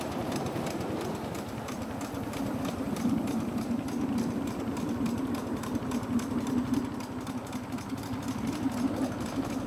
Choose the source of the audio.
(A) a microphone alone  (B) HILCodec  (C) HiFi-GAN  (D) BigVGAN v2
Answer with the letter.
A